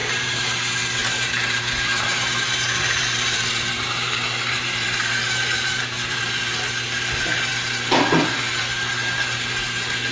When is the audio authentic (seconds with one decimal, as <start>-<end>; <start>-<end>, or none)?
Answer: 0.6-1.0; 6.2-10.1